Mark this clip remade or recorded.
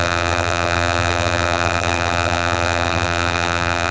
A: remade